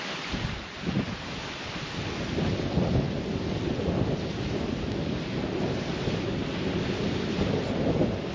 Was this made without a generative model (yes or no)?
yes